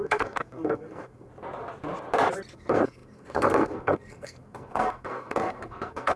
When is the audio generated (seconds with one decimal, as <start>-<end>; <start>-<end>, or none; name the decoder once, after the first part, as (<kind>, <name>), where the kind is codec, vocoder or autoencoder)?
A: 0.0-1.3 (codec, SNAC); 2.5-6.2